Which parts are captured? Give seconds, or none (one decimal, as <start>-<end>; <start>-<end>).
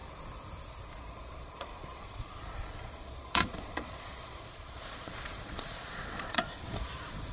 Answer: 0.0-1.0